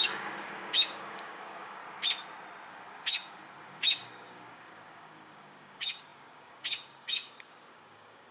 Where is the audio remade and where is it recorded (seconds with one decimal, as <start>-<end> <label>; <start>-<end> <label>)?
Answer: 0.0-1.8 remade; 1.8-2.7 recorded; 2.7-8.3 remade